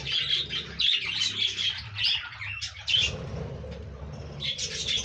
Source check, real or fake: real